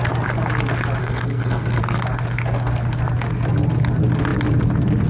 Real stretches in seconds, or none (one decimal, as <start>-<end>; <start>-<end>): 0.0-1.0; 1.8-5.1